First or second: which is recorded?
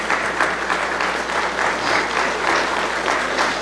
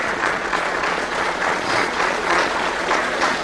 first